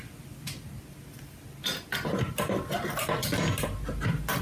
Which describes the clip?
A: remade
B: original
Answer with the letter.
B